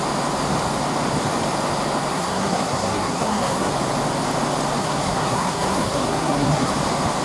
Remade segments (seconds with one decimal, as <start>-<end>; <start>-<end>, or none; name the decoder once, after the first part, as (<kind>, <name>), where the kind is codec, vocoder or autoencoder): 2.1-3.7 (codec, SNAC); 4.8-6.7